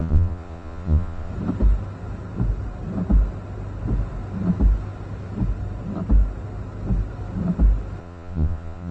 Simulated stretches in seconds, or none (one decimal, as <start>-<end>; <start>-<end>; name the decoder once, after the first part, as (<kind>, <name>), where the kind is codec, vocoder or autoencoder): 0.0-1.3 (vocoder, Vocos); 8.0-8.9